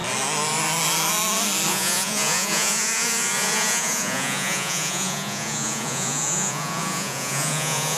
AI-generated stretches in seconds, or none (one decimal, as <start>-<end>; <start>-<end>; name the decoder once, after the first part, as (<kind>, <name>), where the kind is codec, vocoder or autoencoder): 1.7-8.0 (vocoder, Vocos)

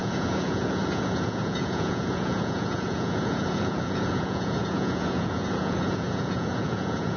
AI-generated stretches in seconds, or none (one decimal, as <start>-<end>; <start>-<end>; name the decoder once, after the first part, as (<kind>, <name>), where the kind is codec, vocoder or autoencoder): 0.0-7.2 (vocoder, Vocos)

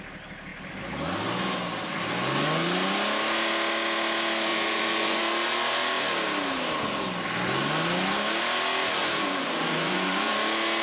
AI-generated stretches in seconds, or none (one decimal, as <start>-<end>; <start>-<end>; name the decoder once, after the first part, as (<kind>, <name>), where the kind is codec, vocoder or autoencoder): 4.5-5.2 (vocoder, Vocos); 9.0-10.3

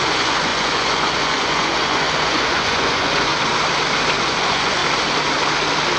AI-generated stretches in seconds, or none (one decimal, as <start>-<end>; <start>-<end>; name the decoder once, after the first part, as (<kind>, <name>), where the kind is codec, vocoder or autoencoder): 0.0-3.3 (vocoder, Vocos); 4.2-4.8